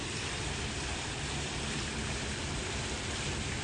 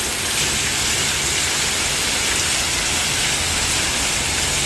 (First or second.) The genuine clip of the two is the second